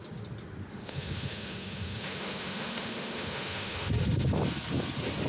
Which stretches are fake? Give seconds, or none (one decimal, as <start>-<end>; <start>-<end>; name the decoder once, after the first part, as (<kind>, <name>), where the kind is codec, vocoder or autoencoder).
0.7-3.9 (autoencoder, DAC-VAE)